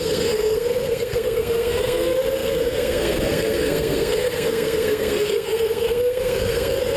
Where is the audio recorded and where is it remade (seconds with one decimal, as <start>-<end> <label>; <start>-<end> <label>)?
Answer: 0.0-7.0 remade